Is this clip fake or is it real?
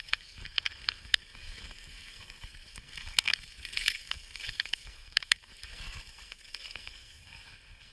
fake